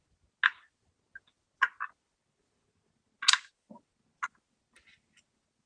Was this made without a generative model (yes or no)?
yes